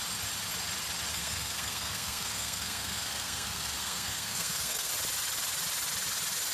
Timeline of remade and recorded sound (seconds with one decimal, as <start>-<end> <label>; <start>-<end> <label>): 0.0-1.1 recorded; 1.1-4.9 remade; 4.9-6.5 recorded